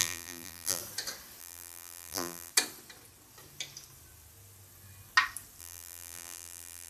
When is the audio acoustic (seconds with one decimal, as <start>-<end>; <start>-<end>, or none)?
0.8-1.4; 2.5-5.6